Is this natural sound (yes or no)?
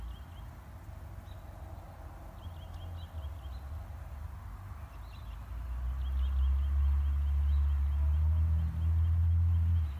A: yes